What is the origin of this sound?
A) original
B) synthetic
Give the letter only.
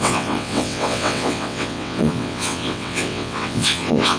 B